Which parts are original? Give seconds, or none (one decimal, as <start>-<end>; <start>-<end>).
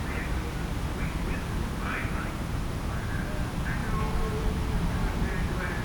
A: 0.0-2.0; 3.3-3.8; 5.3-5.8